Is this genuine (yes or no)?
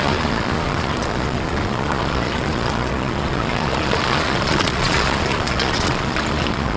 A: no